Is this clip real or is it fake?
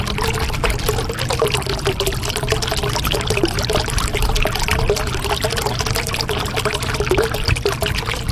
real